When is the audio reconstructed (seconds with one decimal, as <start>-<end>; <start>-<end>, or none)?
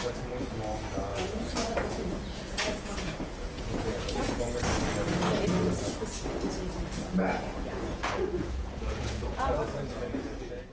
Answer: 1.1-4.4; 7.3-10.7